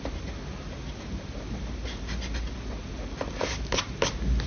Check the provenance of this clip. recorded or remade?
recorded